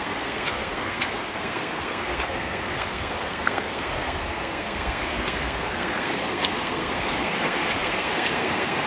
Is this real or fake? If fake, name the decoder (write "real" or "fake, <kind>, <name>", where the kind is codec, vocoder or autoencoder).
fake, codec, SNAC